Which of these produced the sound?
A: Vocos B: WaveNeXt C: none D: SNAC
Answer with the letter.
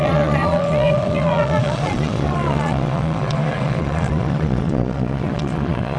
A